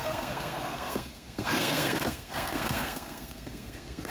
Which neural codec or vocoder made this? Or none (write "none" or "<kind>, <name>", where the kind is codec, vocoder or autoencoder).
codec, SNAC